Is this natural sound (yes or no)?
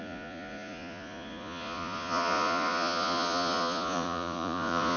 no